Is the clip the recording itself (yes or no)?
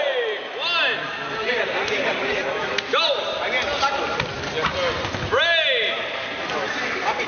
yes